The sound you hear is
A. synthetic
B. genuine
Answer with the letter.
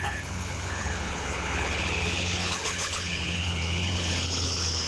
A